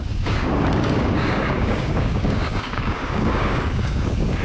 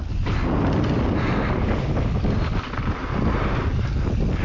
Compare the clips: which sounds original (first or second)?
second